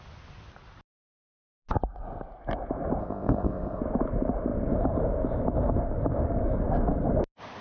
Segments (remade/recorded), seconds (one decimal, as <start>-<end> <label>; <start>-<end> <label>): 0.0-3.0 recorded; 3.0-3.8 remade; 3.8-7.6 recorded